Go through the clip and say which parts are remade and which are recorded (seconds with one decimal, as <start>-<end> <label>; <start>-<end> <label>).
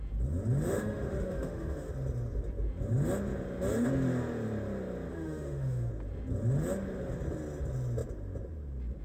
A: 0.0-0.7 recorded; 0.7-1.9 remade; 1.9-5.1 recorded; 5.1-5.9 remade; 5.9-9.0 recorded